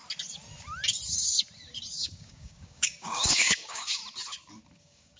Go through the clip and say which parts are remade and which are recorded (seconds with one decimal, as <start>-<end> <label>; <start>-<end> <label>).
0.0-1.9 recorded; 1.9-4.0 remade; 4.0-4.8 recorded; 4.8-5.2 remade